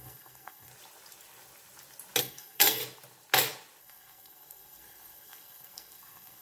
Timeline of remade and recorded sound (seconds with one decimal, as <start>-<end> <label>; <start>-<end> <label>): 0.0-0.7 remade; 0.7-2.2 recorded; 2.2-2.8 remade; 2.8-3.8 recorded; 3.8-6.4 remade